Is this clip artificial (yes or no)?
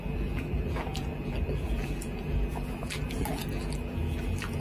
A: yes